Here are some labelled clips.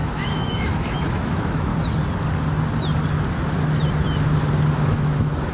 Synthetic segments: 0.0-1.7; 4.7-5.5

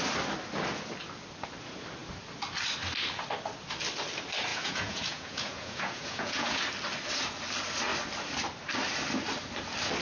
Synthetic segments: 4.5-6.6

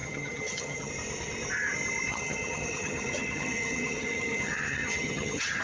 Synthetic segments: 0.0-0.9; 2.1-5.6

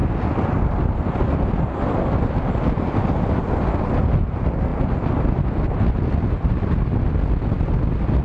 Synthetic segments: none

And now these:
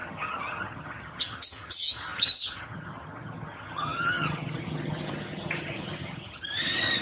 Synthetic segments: 0.0-7.0

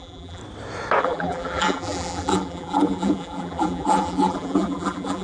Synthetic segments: 0.0-0.4; 1.0-5.2

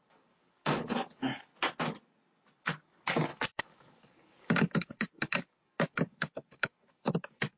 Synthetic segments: 0.0-1.5; 2.6-7.6